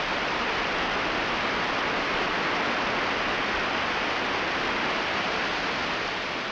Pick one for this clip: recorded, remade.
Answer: recorded